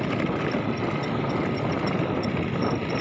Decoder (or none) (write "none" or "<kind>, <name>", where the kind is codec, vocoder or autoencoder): none